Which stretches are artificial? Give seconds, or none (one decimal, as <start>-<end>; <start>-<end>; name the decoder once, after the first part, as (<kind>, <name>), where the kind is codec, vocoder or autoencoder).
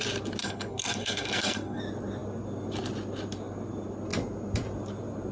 0.4-1.8 (codec, SNAC)